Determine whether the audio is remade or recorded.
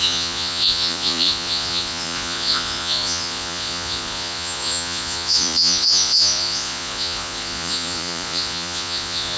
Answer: remade